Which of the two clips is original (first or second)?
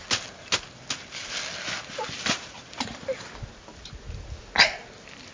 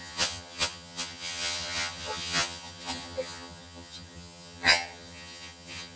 first